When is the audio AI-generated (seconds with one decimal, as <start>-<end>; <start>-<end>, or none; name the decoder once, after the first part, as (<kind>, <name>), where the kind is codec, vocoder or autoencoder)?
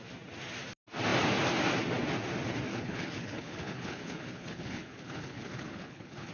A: 2.7-6.3 (codec, HILCodec)